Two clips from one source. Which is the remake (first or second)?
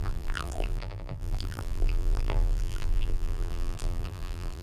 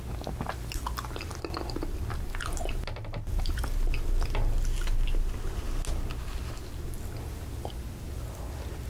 first